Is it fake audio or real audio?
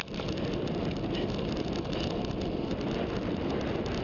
real